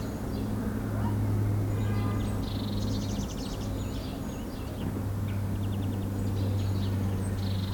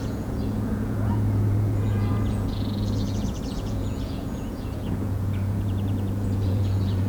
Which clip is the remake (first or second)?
second